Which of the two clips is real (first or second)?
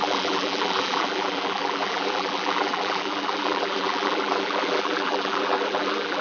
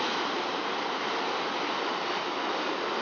second